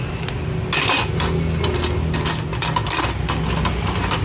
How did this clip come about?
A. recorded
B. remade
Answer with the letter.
A